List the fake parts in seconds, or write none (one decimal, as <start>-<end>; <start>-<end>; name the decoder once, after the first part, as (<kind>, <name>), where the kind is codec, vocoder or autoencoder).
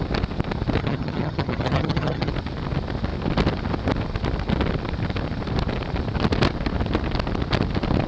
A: 0.8-2.3 (vocoder, HiFi-GAN)